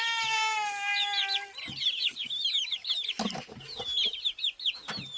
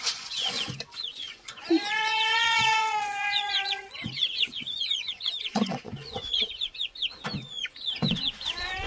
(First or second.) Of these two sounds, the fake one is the second